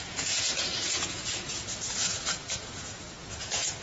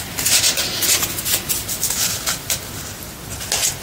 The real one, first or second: second